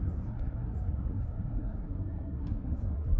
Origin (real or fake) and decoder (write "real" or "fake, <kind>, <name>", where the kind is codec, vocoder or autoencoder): fake, codec, SNAC